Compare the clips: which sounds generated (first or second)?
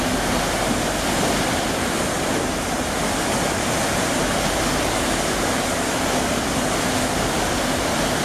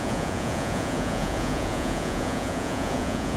second